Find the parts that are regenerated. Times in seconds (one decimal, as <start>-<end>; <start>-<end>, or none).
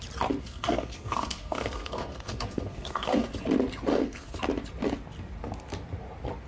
0.4-3.3; 3.9-4.4